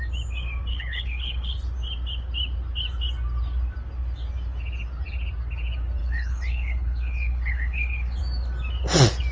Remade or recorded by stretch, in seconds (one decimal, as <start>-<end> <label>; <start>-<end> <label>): 0.0-0.7 recorded; 0.7-1.6 remade; 1.6-6.0 recorded; 6.0-8.2 remade; 8.2-9.3 recorded